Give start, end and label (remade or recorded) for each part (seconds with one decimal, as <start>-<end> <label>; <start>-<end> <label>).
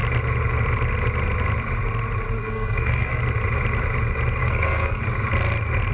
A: 0.0-2.4 recorded; 2.4-3.2 remade; 3.2-4.4 recorded; 4.4-5.0 remade; 5.0-5.9 recorded